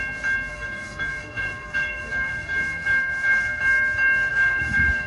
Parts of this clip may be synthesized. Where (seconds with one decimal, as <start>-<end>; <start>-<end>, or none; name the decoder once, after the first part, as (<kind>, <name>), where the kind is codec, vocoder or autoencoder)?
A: 0.5-3.6 (codec, SNAC); 4.3-5.1